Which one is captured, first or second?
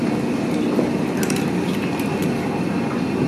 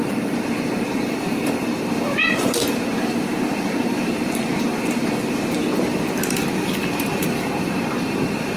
first